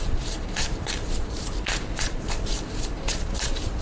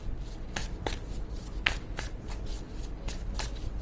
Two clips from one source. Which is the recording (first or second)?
second